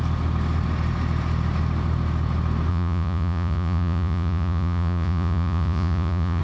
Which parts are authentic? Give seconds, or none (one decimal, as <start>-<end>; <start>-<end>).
0.0-2.7